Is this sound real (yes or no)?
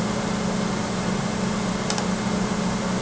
yes